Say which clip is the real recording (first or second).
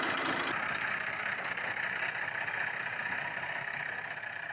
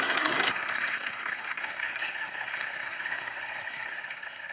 first